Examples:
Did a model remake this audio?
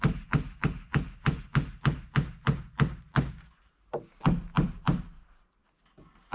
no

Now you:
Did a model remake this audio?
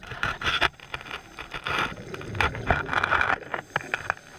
no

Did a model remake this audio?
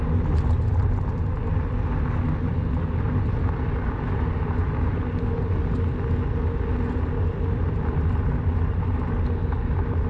no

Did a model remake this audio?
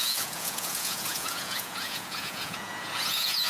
yes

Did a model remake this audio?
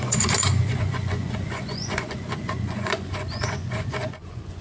yes